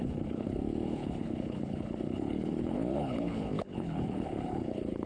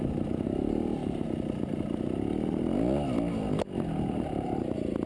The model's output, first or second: first